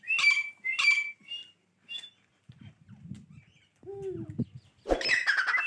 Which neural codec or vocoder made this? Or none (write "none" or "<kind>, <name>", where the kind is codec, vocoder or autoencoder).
none